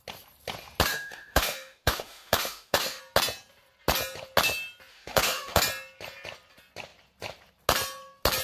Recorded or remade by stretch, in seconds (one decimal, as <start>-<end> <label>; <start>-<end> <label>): 0.0-0.9 recorded; 0.9-3.0 remade; 3.0-4.9 recorded; 4.9-5.6 remade; 5.6-8.4 recorded